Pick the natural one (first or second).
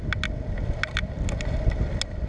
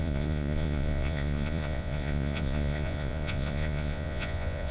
first